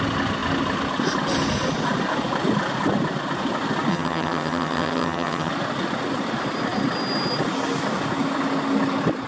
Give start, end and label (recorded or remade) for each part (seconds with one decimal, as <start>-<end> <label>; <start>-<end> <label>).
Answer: 0.0-3.9 recorded; 3.9-5.5 remade; 5.5-9.3 recorded